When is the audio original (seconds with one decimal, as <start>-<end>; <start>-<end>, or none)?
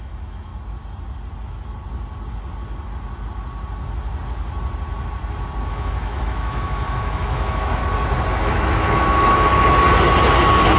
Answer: 0.5-5.7; 7.8-8.4; 9.5-10.8